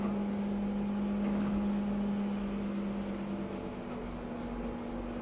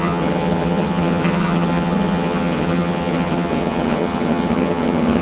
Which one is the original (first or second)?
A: first